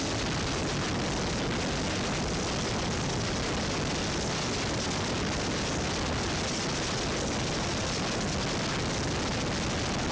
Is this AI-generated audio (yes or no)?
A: no